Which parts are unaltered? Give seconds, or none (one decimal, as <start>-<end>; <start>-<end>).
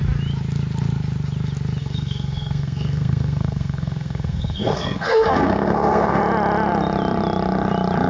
0.0-1.8; 6.2-8.1